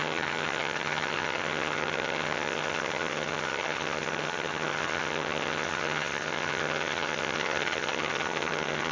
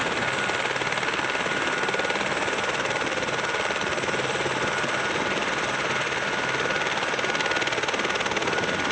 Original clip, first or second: second